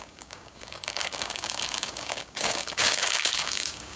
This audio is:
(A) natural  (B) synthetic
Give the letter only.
B